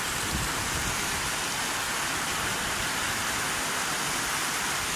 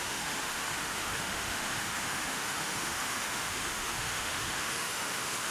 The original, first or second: first